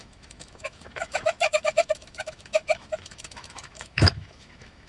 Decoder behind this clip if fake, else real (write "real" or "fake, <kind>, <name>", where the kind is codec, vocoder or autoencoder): fake, autoencoder, DAC-VAE